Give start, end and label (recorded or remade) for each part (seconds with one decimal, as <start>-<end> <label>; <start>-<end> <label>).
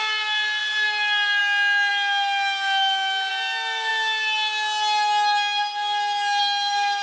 0.0-7.0 recorded